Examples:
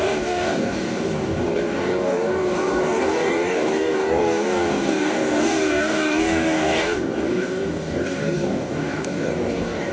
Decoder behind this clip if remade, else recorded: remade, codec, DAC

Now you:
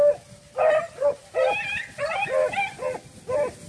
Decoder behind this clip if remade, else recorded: recorded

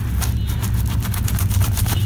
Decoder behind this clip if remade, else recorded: recorded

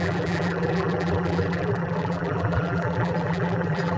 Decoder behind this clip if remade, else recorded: remade, vocoder, BigVGAN v2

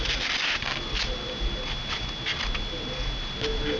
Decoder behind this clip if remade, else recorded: recorded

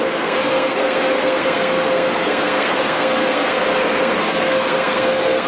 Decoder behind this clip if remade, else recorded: remade, codec, SNAC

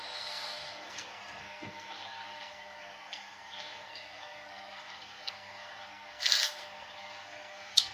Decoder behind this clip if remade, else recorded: remade, codec, SNAC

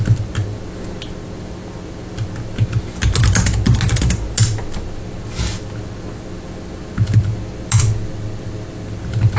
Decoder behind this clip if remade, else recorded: recorded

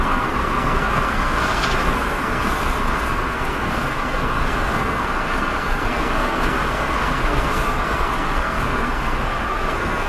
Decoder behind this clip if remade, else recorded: remade, codec, SNAC